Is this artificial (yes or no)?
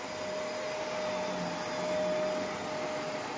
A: no